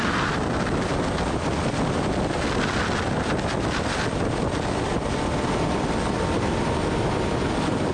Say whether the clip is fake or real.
real